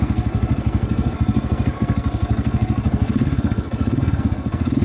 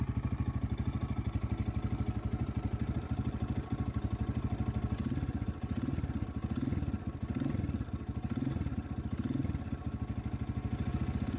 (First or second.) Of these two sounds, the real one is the second